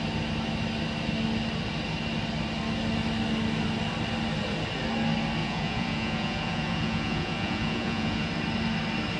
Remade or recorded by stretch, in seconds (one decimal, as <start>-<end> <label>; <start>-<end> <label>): 0.0-5.4 recorded; 5.4-8.3 remade; 8.3-9.2 recorded